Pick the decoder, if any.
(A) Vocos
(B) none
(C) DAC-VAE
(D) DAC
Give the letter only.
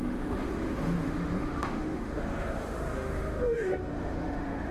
C